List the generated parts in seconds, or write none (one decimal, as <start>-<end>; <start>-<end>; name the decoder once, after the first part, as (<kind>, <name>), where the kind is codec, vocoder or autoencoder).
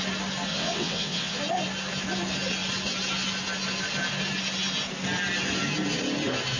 0.5-1.4 (vocoder, WaveNeXt)